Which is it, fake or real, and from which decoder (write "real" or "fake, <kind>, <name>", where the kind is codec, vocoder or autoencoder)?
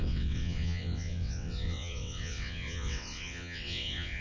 fake, vocoder, WaveNeXt